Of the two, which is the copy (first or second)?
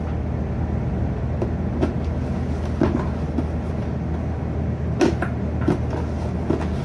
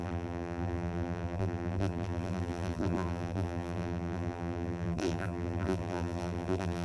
second